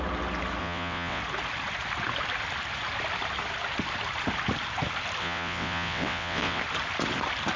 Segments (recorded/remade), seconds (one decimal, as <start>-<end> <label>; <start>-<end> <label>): 0.0-0.6 recorded; 0.6-1.2 remade; 1.2-5.2 recorded; 5.2-6.6 remade; 6.6-7.6 recorded